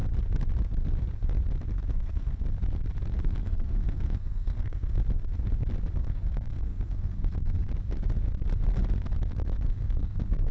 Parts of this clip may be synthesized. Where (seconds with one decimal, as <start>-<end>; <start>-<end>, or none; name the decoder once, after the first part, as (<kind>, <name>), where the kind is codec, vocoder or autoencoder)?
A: 1.9-2.4 (codec, SNAC); 3.2-5.0; 6.0-7.7; 9.3-10.5